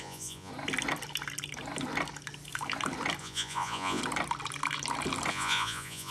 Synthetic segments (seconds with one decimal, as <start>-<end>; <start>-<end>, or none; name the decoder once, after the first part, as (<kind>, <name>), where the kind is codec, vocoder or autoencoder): 0.0-0.5 (vocoder, Vocos); 3.2-4.0; 5.3-6.1